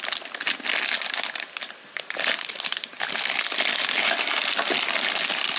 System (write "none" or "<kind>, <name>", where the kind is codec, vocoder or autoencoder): none